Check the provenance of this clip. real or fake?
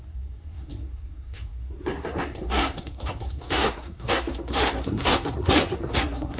fake